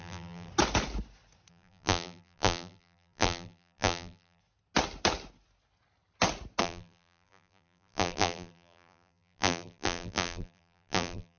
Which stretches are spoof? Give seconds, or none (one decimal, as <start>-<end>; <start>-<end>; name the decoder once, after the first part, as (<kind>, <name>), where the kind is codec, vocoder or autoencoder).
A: 0.0-0.5 (vocoder, BigVGAN v2); 1.5-4.4; 6.6-11.4